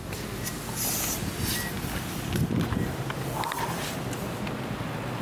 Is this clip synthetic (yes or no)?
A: no